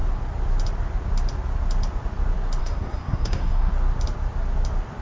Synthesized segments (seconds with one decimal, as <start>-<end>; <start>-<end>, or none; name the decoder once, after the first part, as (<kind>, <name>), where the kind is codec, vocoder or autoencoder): 2.6-3.7 (codec, SNAC)